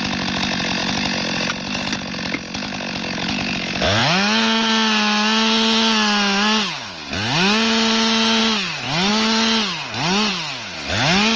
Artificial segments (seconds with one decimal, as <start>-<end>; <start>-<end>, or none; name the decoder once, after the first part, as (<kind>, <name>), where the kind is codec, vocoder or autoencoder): none